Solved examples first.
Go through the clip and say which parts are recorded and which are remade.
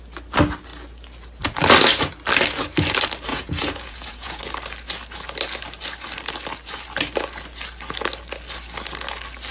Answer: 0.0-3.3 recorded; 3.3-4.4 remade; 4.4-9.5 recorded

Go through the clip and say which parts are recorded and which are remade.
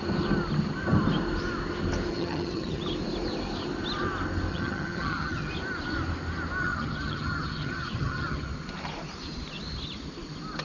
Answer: 0.0-2.1 recorded; 2.1-2.8 remade; 2.8-4.5 recorded; 4.5-5.5 remade; 5.5-6.6 recorded; 6.6-8.5 remade; 8.5-10.6 recorded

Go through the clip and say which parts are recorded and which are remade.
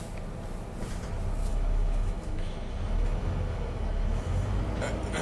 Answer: 0.0-1.5 recorded; 1.5-4.6 remade; 4.6-5.2 recorded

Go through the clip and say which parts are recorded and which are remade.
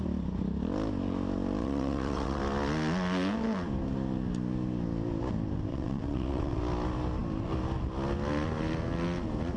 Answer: 0.0-1.6 recorded; 1.6-2.4 remade; 2.4-5.7 recorded; 5.7-6.6 remade; 6.6-9.6 recorded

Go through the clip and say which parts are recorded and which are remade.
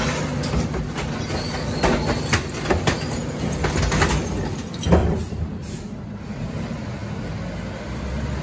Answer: 0.0-5.0 recorded; 5.0-5.5 remade; 5.5-8.4 recorded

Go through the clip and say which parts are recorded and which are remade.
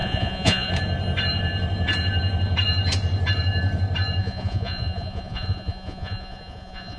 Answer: 0.0-0.7 remade; 0.7-4.2 recorded; 4.2-7.0 remade